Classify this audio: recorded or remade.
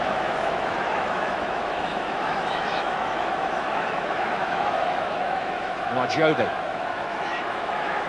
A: remade